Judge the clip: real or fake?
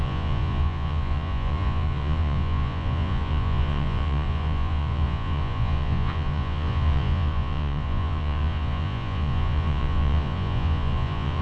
fake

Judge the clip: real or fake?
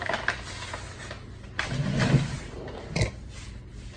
real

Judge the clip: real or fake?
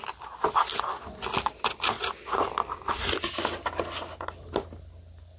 real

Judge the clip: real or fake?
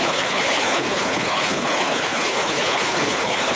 fake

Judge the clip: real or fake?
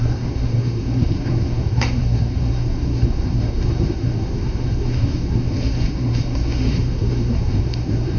fake